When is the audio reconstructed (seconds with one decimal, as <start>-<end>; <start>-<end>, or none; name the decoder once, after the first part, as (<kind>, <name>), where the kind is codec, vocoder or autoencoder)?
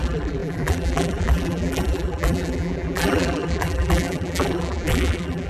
0.0-5.5 (vocoder, BigVGAN v2)